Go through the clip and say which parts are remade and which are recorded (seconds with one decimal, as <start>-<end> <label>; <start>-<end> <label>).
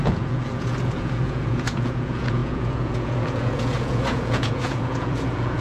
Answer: 0.0-5.6 remade